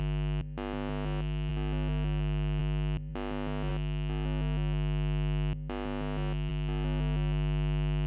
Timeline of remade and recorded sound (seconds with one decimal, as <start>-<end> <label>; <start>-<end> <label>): 0.0-8.1 recorded